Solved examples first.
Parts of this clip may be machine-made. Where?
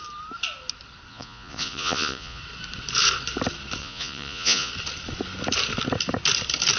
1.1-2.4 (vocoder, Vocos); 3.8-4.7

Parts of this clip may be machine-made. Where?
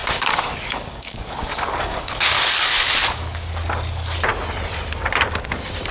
0.0-3.5 (codec, DAC)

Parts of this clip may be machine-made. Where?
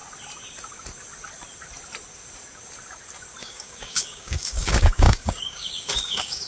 3.4-6.5 (codec, DAC)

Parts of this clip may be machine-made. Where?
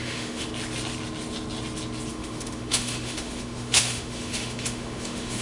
0.0-0.5 (autoencoder, DAC-VAE); 2.1-5.4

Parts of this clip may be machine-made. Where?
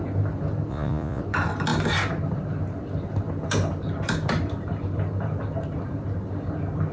0.7-1.2 (vocoder, Vocos)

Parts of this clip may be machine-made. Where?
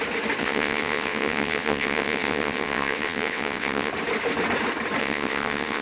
0.4-3.9 (vocoder, WaveNeXt); 5.0-5.8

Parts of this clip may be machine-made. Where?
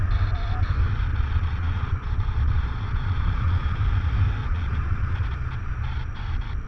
1.1-3.8 (vocoder, Vocos); 4.4-6.2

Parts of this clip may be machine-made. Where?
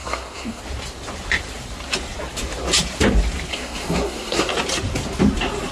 0.0-0.6 (codec, SNAC); 3.5-4.5